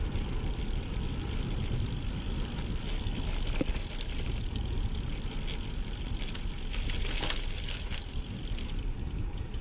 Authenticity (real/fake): real